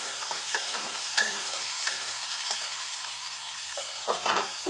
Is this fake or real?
fake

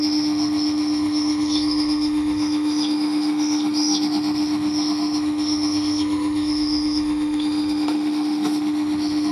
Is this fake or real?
fake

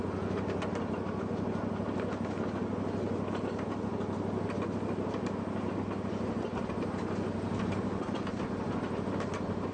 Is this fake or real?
real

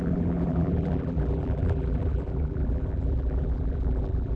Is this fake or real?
fake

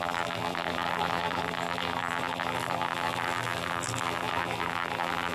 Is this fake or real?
fake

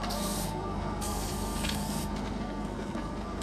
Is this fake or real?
fake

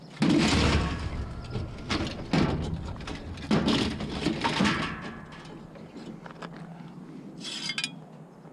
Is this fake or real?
real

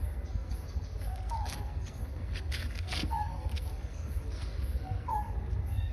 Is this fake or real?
fake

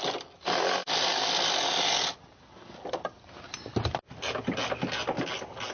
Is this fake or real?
real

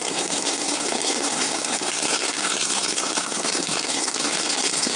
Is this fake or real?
fake